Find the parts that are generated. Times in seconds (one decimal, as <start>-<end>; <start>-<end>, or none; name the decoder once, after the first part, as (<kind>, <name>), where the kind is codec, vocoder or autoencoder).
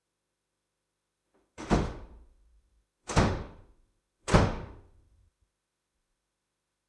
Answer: 0.0-6.9 (autoencoder, DAC-VAE)